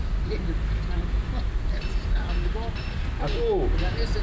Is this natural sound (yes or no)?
yes